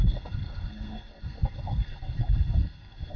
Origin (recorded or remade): remade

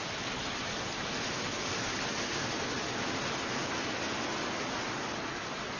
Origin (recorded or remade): recorded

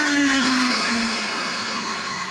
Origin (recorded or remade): remade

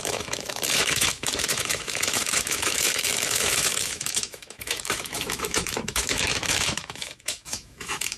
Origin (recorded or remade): remade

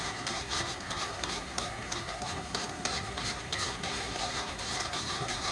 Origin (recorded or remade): remade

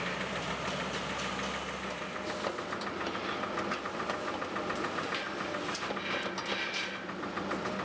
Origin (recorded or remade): recorded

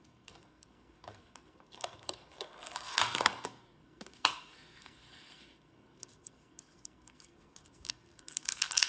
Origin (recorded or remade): remade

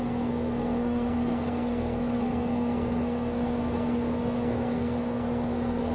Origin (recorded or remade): remade